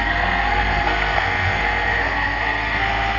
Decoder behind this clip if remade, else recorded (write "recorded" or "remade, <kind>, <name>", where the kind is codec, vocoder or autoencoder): remade, codec, SNAC